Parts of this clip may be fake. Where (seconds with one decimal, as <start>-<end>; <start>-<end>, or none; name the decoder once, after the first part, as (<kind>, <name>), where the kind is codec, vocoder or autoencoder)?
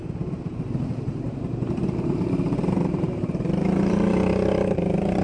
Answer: 0.0-5.2 (vocoder, BigVGAN v2)